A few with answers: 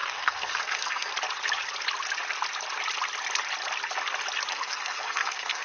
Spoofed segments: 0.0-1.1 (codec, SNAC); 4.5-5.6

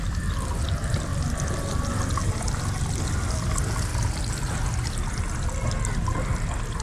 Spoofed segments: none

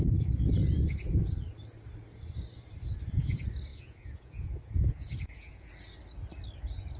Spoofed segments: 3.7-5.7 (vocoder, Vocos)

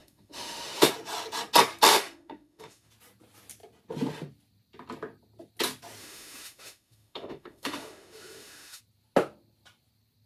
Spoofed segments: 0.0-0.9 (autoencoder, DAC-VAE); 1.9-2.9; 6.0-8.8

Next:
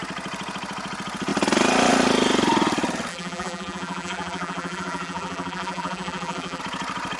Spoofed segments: 3.1-6.6 (vocoder, BigVGAN v2)

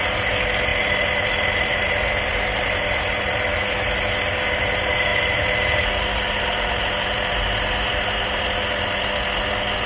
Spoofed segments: none

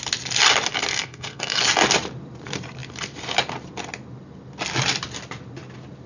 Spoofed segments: 0.9-1.6 (codec, SNAC)